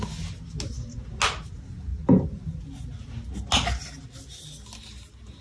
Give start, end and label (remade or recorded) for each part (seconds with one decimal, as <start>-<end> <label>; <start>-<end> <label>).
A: 0.0-5.4 recorded